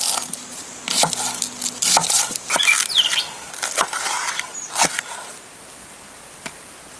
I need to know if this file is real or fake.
real